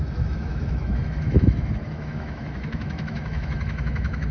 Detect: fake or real fake